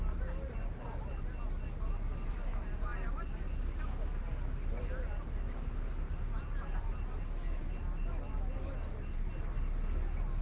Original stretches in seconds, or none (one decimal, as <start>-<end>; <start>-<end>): 0.0-10.4